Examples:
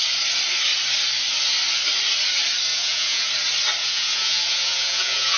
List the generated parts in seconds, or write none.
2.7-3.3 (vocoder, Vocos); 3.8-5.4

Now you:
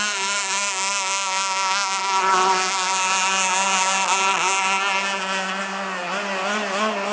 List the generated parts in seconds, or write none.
none

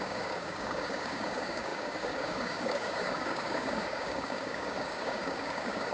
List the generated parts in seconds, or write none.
0.0-5.9 (codec, DAC)

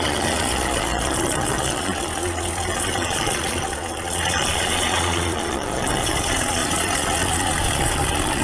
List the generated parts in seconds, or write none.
0.0-8.4 (vocoder, Vocos)

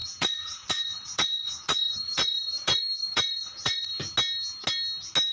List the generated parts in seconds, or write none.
0.0-3.9 (vocoder, Vocos)

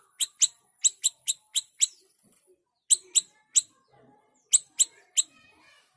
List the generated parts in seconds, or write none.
none

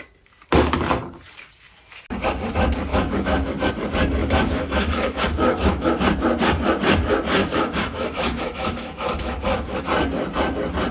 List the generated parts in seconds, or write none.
2.9-3.7 (autoencoder, DAC-VAE); 4.2-6.0; 7.4-9.8